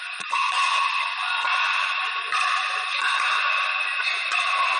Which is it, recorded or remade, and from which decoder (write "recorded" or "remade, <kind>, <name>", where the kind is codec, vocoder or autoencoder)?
remade, vocoder, Vocos